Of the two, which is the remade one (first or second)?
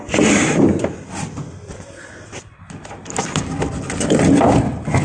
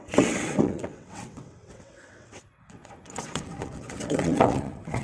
second